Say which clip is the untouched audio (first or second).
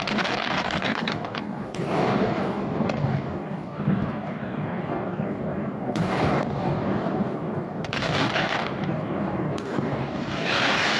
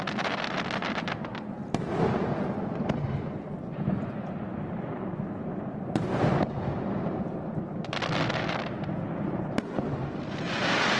second